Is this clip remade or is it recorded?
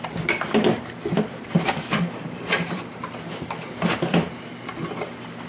remade